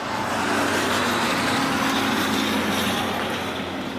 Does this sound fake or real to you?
real